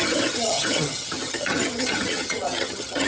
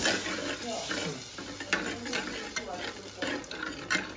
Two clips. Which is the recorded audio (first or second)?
second